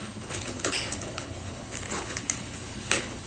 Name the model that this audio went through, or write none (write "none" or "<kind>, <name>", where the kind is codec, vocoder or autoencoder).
codec, HILCodec